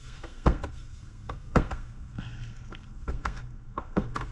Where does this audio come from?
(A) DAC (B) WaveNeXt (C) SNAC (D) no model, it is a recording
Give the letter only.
C